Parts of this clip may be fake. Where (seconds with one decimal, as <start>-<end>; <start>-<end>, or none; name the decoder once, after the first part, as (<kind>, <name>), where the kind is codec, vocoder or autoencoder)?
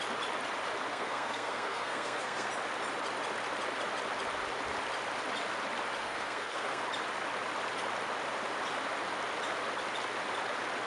0.9-2.5 (codec, SNAC); 6.0-6.8